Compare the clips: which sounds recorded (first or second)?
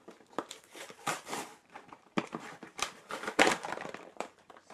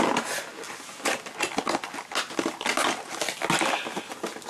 second